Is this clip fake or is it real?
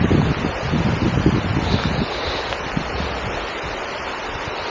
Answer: real